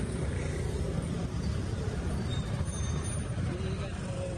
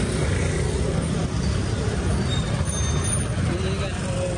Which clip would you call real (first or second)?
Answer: second